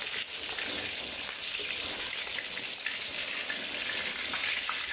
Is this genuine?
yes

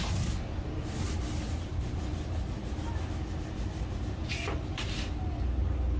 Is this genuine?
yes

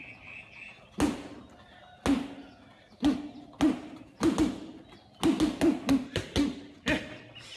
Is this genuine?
yes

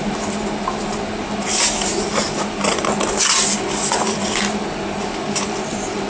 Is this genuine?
yes